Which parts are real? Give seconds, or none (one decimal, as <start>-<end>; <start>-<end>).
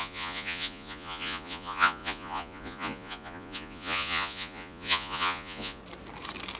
5.8-6.6